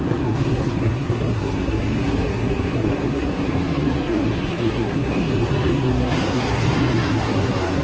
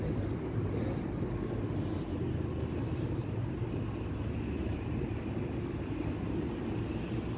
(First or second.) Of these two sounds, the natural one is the second